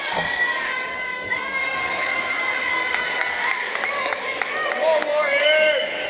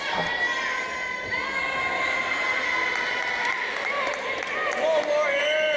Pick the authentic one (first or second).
second